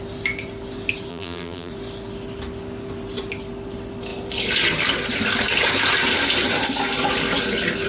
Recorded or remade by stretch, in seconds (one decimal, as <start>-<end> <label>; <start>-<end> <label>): 0.0-1.1 recorded; 1.1-1.7 remade; 1.7-7.9 recorded